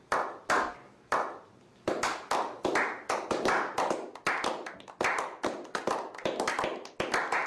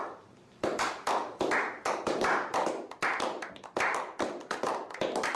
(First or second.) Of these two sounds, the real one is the first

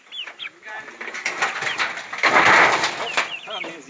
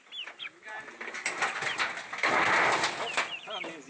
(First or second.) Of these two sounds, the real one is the second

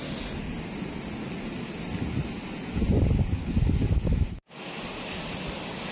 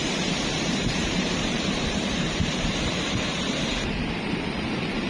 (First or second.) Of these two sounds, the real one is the first